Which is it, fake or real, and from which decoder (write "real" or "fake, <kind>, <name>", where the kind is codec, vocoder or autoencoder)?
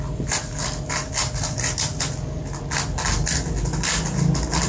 real